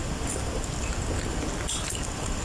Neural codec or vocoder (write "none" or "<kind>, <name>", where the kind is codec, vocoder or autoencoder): none